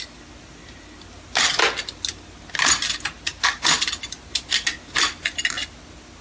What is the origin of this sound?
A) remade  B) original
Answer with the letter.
B